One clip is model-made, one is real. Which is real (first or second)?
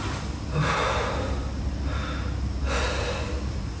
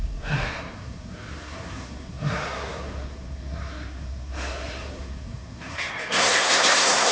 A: first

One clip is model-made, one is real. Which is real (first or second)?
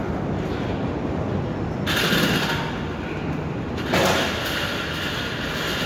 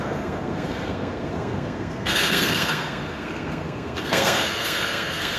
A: first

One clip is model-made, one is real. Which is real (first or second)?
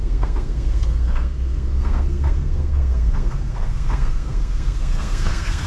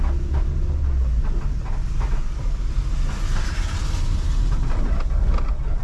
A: second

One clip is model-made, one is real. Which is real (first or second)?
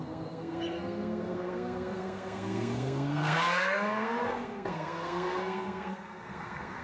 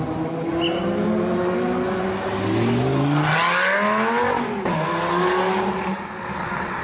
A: second